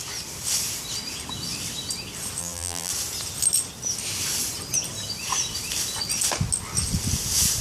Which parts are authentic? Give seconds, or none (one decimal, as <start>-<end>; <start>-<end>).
0.0-2.4; 2.9-7.6

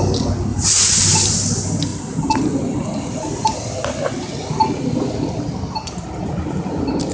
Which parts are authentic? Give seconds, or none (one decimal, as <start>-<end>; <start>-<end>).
0.0-0.5; 1.2-7.1

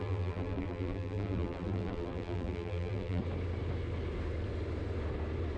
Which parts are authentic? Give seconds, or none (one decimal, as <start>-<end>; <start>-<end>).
3.2-5.6